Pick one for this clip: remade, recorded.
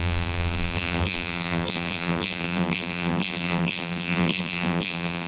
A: remade